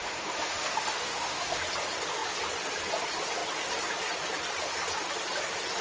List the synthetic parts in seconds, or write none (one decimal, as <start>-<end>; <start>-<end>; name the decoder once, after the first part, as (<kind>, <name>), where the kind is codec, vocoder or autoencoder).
0.0-1.6 (autoencoder, DAC-VAE)

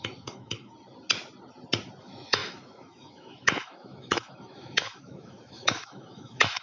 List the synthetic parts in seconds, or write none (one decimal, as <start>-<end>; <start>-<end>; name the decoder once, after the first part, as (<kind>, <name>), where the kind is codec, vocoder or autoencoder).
0.0-0.7 (autoencoder, DAC-VAE); 2.0-6.6